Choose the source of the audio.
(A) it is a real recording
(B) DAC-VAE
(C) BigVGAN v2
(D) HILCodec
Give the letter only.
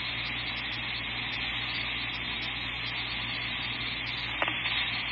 A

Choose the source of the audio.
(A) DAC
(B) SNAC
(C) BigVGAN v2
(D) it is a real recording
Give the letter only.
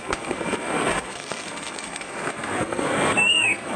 B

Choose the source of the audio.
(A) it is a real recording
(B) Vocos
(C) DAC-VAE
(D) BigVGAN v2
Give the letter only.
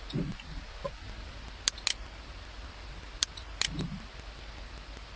A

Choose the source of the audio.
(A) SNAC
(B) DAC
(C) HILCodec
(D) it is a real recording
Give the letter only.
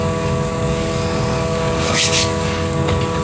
B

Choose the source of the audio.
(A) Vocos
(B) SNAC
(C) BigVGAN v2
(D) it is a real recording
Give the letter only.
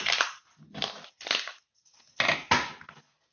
D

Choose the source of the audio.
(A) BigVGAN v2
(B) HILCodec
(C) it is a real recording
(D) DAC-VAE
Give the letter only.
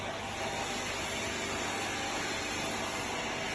C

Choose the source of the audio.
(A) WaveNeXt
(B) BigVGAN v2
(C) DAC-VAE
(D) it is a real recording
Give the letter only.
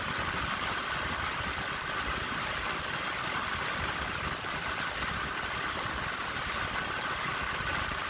D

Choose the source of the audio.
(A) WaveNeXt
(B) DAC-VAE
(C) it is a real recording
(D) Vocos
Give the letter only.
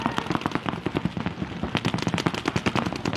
C